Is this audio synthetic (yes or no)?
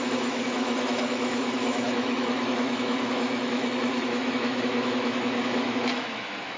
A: yes